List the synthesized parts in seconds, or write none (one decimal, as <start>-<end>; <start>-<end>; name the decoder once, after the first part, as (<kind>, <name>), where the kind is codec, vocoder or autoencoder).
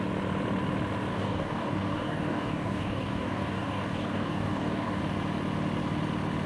1.1-5.0 (codec, DAC)